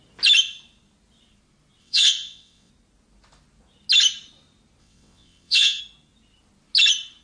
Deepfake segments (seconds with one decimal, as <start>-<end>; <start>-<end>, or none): 1.8-2.7; 4.8-5.8